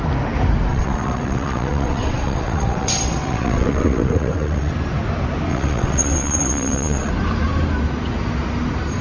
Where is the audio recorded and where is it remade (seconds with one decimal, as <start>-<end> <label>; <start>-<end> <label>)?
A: 0.0-0.7 recorded; 0.7-4.7 remade; 4.7-5.5 recorded; 5.5-7.1 remade; 7.1-9.0 recorded